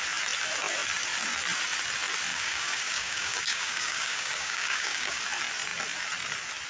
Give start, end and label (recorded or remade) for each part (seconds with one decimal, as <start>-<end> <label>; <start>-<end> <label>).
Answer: 0.0-2.3 recorded; 2.3-5.2 remade; 5.2-6.7 recorded